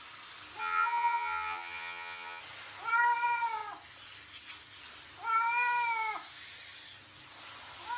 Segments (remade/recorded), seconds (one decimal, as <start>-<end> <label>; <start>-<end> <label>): 0.0-0.6 recorded; 0.6-2.4 remade; 2.4-8.0 recorded